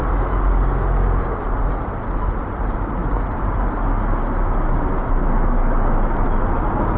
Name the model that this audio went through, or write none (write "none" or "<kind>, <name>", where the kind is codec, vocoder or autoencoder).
none